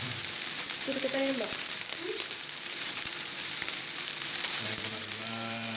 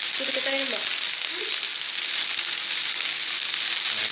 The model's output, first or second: first